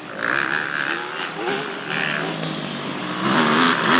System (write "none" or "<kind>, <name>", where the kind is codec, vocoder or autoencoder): none